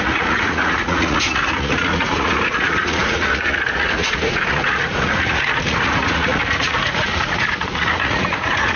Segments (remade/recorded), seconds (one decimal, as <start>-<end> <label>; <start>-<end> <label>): 0.0-8.8 remade